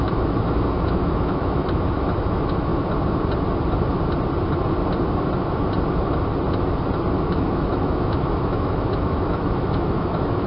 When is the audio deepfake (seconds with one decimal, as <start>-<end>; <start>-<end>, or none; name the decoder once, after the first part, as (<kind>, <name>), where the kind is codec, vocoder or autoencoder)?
0.0-2.7 (autoencoder, DAC-VAE); 7.2-10.5